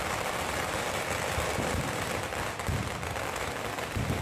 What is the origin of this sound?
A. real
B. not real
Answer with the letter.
B